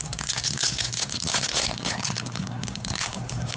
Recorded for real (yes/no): no